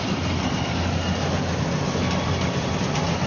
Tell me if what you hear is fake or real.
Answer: real